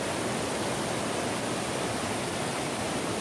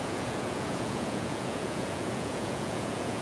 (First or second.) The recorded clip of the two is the first